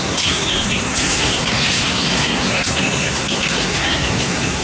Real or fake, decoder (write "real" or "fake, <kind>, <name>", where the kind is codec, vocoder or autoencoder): fake, codec, SNAC